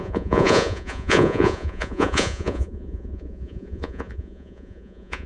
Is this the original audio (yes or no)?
no